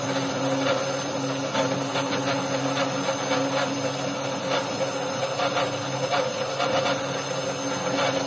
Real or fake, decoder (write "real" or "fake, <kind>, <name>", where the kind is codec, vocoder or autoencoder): real